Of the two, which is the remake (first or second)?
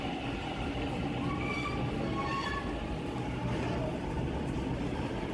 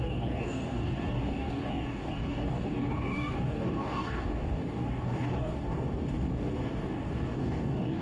second